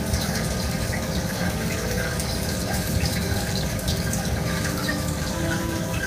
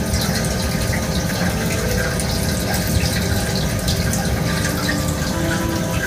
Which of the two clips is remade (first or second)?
first